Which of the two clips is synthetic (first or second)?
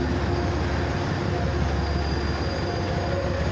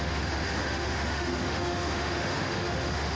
second